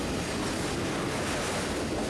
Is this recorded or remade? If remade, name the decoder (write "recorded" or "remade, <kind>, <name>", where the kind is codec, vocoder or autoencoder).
recorded